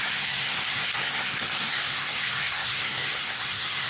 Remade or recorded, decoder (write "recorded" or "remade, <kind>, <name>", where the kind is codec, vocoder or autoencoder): remade, codec, SNAC